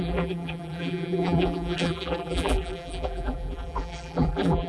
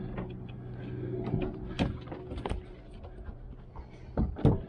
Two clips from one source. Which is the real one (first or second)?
second